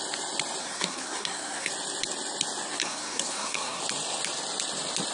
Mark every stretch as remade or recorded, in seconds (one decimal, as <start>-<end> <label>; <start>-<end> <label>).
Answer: 0.0-0.6 recorded; 0.6-1.7 remade; 1.7-2.8 recorded; 2.8-3.8 remade; 3.8-5.1 recorded